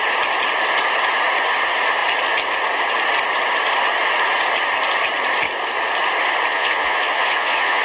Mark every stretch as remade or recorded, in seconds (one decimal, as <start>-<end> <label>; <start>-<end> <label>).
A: 0.0-6.5 recorded; 6.5-7.8 remade